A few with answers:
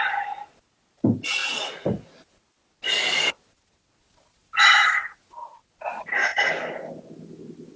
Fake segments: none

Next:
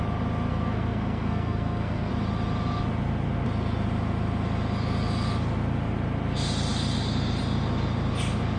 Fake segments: 0.5-2.1 (codec, SNAC)

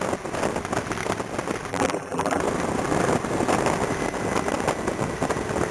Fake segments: 1.7-2.4 (vocoder, BigVGAN v2)

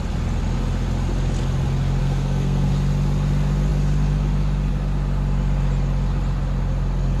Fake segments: 2.0-2.7 (codec, SNAC)

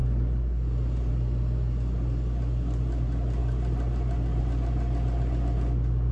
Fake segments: none

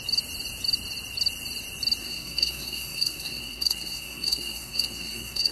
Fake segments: 2.0-5.5 (codec, SNAC)

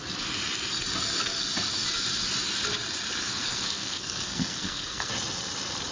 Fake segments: 3.4-5.1 (codec, SNAC)

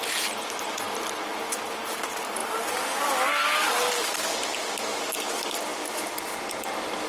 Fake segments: none